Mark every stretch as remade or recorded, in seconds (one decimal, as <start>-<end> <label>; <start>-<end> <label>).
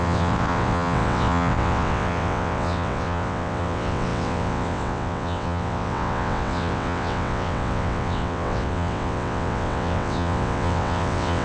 0.0-11.4 remade